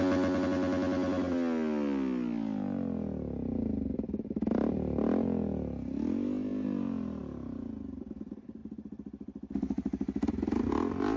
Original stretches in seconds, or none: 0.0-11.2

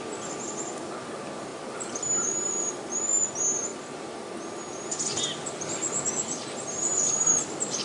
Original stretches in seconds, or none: 0.0-5.1